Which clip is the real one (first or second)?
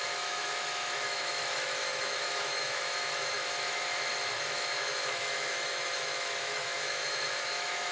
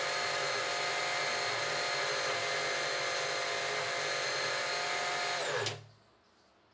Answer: second